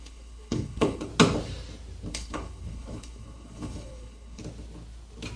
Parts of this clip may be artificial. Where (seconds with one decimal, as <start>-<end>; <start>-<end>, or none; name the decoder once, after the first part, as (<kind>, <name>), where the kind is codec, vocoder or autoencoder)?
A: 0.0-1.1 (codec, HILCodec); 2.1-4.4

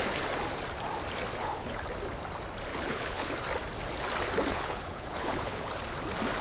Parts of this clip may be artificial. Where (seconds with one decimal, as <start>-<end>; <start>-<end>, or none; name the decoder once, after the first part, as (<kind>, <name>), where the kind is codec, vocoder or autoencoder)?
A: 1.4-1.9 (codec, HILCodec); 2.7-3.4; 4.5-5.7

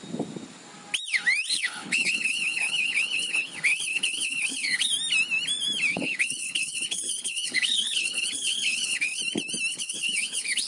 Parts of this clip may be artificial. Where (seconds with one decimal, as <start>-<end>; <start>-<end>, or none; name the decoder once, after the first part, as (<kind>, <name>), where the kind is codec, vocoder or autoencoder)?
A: 1.5-4.9 (codec, HILCodec); 5.9-9.2; 9.7-10.7